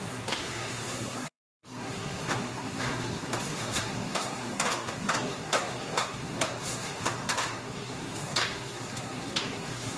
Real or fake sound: fake